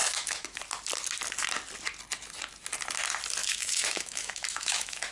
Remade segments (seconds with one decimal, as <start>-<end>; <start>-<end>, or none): 0.0-0.6; 3.4-5.1